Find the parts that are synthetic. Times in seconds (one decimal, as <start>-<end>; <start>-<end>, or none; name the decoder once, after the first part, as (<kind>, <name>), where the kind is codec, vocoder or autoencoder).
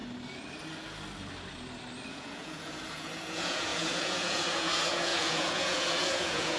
2.1-6.6 (vocoder, Vocos)